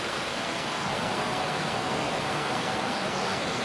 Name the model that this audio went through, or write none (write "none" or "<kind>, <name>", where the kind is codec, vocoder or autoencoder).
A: codec, SNAC